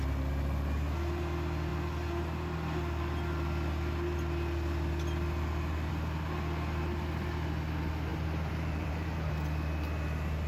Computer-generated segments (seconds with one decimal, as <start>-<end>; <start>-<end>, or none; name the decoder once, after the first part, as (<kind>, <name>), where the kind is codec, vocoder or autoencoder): 8.1-9.3 (vocoder, BigVGAN v2)